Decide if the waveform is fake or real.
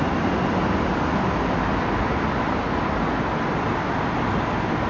real